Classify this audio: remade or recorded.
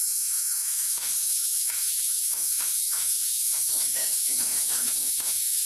remade